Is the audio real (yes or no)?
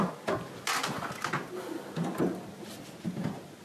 yes